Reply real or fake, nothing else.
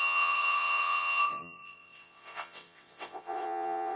fake